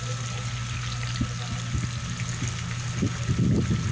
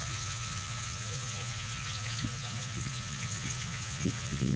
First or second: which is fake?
second